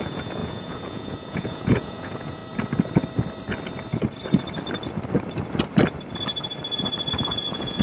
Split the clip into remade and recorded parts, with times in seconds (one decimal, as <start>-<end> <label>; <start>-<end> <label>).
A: 0.0-2.4 remade; 2.4-7.1 recorded; 7.1-7.8 remade